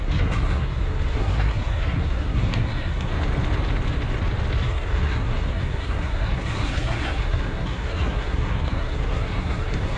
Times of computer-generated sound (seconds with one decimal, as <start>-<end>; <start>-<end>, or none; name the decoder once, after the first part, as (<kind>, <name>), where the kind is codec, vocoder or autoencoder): 0.0-3.1 (codec, SNAC); 4.6-10.0

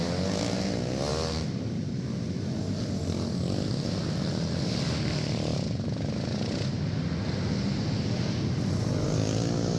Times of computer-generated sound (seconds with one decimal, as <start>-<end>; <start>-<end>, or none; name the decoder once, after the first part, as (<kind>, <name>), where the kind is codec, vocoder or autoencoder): none

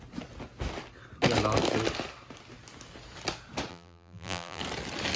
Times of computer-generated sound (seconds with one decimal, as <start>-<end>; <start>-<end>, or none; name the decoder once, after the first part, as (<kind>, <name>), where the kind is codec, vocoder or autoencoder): 3.7-4.6 (vocoder, BigVGAN v2)

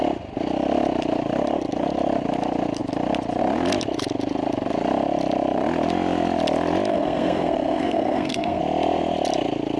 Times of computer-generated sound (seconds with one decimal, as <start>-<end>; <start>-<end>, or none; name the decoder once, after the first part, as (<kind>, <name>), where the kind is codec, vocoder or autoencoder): 6.9-8.6 (codec, SNAC)

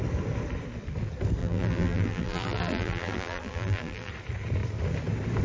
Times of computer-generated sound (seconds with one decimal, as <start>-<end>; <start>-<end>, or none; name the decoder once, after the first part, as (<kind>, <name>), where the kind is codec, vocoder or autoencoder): 1.4-4.1 (vocoder, BigVGAN v2)

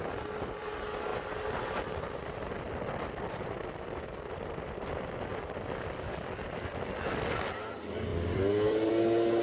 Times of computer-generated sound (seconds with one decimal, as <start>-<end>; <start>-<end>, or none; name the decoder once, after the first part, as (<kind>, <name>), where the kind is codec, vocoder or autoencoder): 1.1-5.1 (vocoder, BigVGAN v2); 8.1-8.9

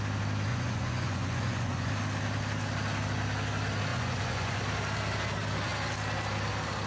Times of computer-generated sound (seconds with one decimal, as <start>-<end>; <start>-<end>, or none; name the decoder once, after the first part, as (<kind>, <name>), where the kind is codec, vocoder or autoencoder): 0.5-1.9 (vocoder, Vocos); 3.9-4.6

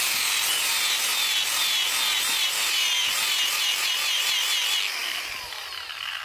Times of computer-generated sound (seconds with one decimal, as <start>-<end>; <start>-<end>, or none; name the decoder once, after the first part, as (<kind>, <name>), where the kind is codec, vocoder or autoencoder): none